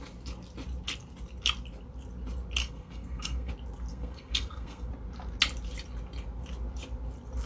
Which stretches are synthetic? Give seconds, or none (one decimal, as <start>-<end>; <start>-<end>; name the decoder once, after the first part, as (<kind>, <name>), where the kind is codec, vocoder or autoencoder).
2.6-3.5 (codec, SNAC); 3.9-4.9